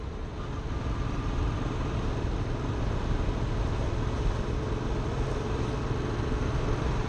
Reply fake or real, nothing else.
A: real